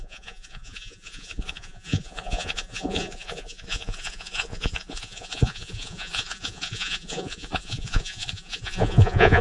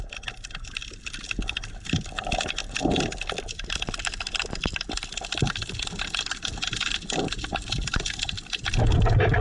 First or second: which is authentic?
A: second